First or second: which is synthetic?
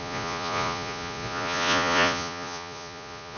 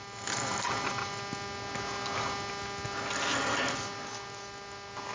first